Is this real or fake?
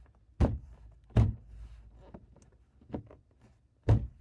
real